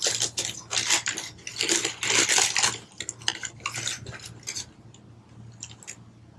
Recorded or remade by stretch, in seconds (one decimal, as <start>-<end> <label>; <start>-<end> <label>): 0.0-6.4 recorded